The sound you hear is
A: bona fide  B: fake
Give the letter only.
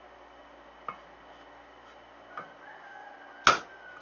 A